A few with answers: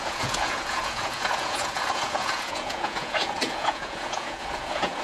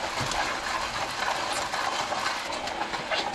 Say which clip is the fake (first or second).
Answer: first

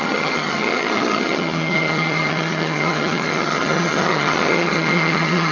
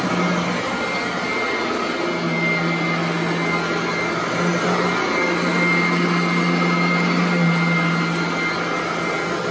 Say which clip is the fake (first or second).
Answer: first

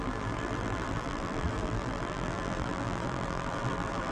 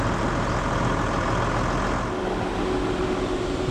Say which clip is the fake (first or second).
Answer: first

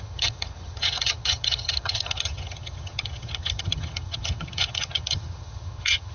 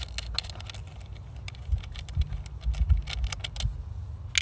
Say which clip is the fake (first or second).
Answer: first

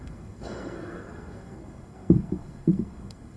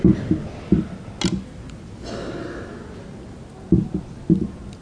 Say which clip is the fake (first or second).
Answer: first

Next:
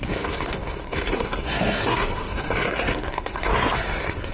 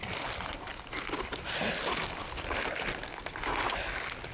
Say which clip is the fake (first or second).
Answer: first